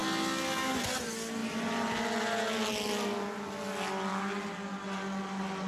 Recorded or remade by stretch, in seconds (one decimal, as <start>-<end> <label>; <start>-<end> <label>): 0.0-5.7 recorded